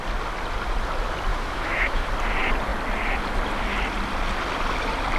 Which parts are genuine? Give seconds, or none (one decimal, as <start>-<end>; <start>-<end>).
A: 0.0-1.3; 2.1-5.2

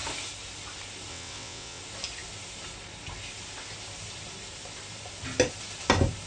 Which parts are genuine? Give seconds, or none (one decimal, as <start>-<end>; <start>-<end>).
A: 0.0-1.1; 1.8-6.3

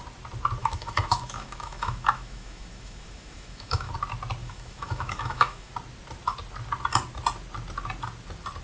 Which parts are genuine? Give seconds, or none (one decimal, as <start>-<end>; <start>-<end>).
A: 0.0-0.6; 3.9-4.4; 5.7-8.6

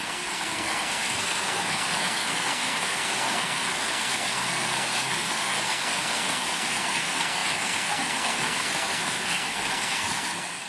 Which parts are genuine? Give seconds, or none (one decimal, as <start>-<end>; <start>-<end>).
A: none

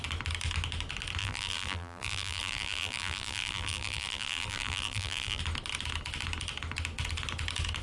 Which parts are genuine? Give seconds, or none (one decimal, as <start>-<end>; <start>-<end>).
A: 0.0-1.2; 5.4-7.8

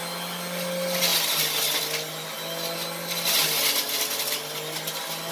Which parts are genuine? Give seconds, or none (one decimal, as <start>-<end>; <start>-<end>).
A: 0.0-5.3